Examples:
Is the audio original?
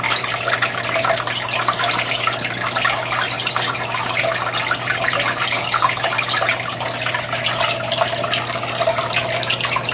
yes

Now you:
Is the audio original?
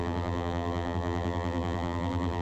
no